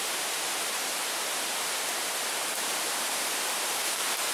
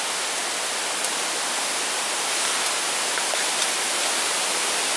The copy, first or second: first